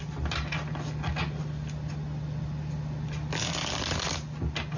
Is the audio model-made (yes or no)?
no